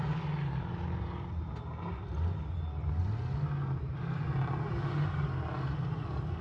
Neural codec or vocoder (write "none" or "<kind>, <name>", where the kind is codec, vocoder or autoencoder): none